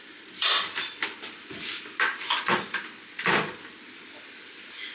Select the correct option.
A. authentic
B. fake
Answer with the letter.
B